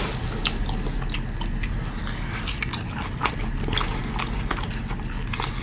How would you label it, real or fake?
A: real